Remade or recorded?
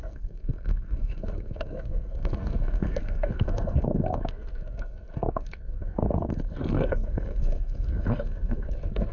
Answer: remade